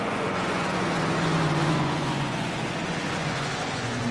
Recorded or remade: remade